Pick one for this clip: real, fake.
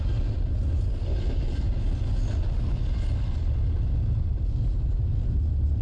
real